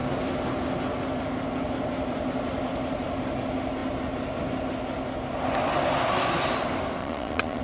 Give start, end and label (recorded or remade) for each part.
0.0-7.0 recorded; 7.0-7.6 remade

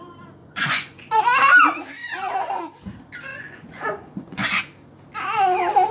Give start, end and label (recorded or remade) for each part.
0.0-0.4 recorded; 0.4-1.2 remade; 1.2-2.0 recorded; 2.0-2.6 remade; 2.6-3.3 recorded; 3.3-4.6 remade; 4.6-5.9 recorded

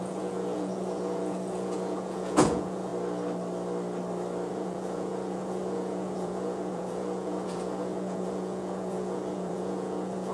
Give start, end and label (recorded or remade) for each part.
0.0-2.9 remade; 2.9-4.5 recorded; 4.5-10.3 remade

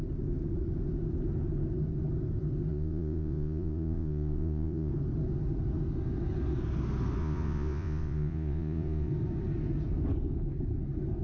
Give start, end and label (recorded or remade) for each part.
0.0-2.7 recorded; 2.7-4.9 remade; 4.9-7.2 recorded; 7.2-9.1 remade; 9.1-11.2 recorded

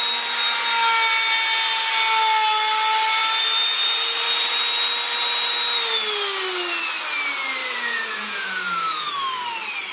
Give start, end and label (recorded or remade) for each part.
0.0-7.6 recorded; 7.6-9.1 remade; 9.1-9.9 recorded

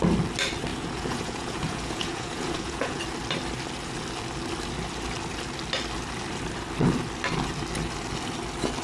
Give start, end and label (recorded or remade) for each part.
0.0-0.7 recorded; 0.7-3.0 remade; 3.0-8.8 recorded

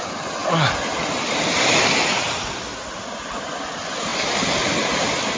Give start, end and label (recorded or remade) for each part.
0.0-5.4 recorded